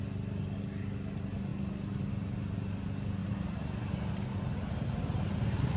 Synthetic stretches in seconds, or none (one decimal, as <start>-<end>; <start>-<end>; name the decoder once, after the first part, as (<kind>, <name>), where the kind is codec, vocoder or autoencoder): none